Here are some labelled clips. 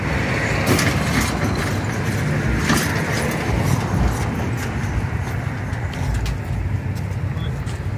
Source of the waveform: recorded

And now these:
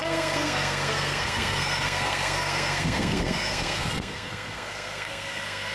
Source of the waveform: remade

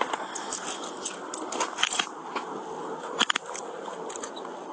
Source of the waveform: recorded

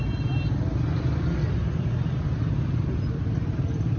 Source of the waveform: recorded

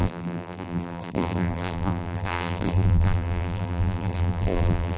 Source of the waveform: remade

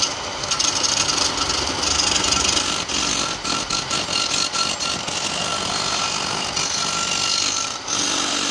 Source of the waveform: recorded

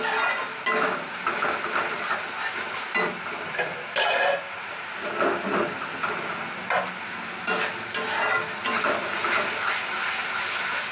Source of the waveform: recorded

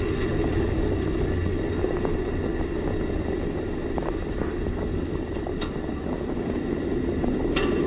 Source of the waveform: recorded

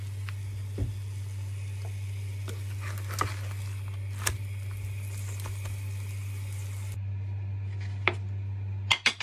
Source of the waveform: recorded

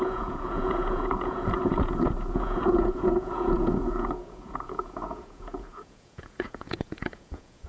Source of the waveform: remade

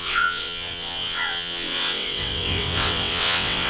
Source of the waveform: remade